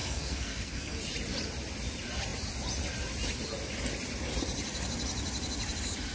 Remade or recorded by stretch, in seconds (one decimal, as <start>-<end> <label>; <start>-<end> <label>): 0.0-1.0 remade; 1.0-6.1 recorded